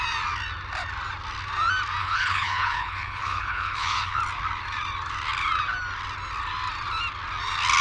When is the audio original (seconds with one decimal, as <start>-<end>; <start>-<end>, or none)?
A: 0.0-2.0; 4.2-7.8